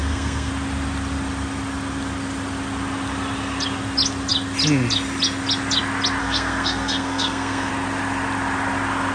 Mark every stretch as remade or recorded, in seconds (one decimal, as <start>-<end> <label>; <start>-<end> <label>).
0.0-0.5 remade; 0.5-6.2 recorded; 6.2-7.7 remade; 7.7-9.1 recorded